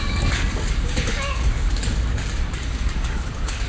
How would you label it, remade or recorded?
remade